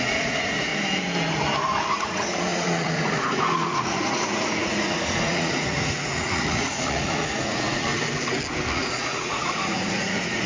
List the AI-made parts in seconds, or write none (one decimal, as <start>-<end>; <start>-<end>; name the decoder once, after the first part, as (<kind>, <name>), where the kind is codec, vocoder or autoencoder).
0.0-0.7 (vocoder, Vocos); 1.9-7.9; 8.7-10.5